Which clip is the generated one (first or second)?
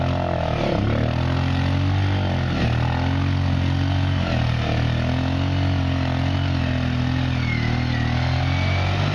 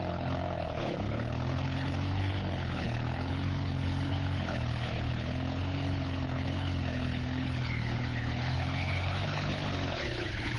second